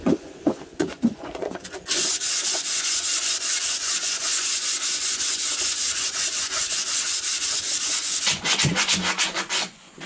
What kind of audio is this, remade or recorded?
remade